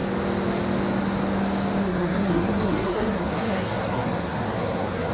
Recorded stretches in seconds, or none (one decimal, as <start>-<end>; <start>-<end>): 0.0-1.8